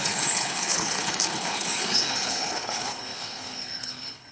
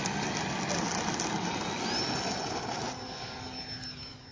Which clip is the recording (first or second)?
second